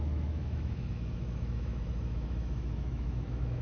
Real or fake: fake